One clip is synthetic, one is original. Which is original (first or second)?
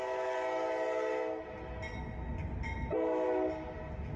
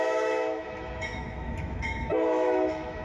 first